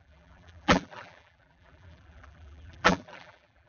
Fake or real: fake